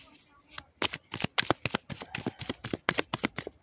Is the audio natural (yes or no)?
yes